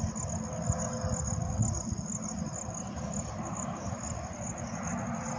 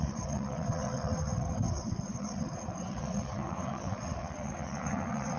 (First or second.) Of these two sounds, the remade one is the second